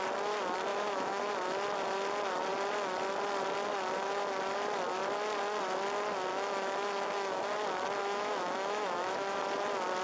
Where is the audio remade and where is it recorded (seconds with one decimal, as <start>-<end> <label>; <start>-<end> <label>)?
0.0-0.7 recorded; 0.7-1.3 remade; 1.3-6.3 recorded; 6.3-7.4 remade; 7.4-8.0 recorded; 8.0-9.4 remade; 9.4-10.0 recorded